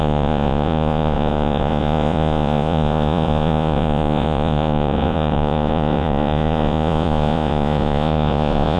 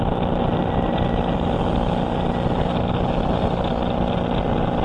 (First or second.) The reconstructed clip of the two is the first